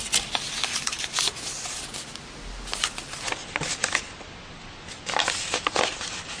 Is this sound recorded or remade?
recorded